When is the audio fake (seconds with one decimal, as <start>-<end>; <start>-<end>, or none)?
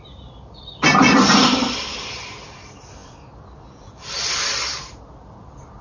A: none